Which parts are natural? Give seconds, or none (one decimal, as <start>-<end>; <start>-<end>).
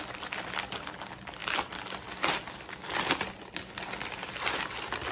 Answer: 0.0-5.1